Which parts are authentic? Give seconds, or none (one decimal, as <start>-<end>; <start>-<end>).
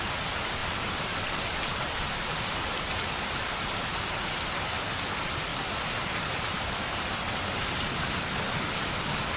0.0-0.6; 4.5-5.5; 8.2-9.4